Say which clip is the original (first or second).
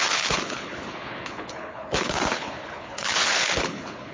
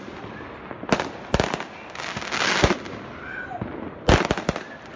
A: second